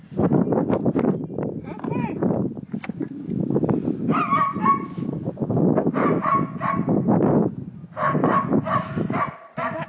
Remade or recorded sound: recorded